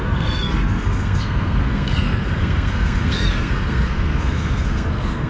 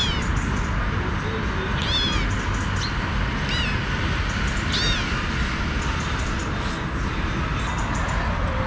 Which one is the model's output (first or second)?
first